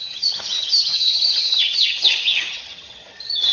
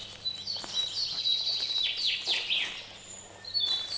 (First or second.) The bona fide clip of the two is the second